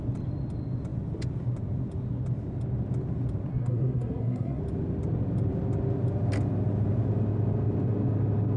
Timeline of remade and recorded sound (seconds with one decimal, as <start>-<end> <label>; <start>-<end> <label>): 0.0-3.5 recorded; 3.5-4.6 remade; 4.6-8.6 recorded